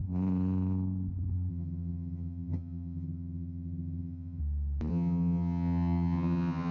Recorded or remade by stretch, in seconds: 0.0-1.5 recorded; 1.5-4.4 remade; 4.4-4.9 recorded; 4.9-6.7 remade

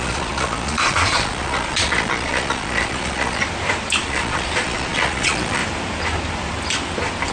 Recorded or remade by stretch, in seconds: 0.0-3.4 remade; 3.4-4.0 recorded; 4.0-5.6 remade; 5.6-7.3 recorded

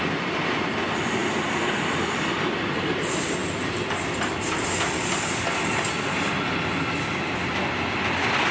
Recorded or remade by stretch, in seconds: 0.0-8.5 recorded

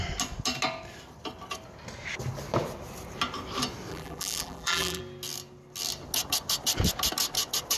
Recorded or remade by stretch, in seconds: 0.0-3.9 recorded; 3.9-5.0 remade; 5.0-7.8 recorded